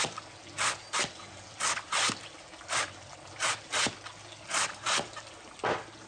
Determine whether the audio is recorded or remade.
recorded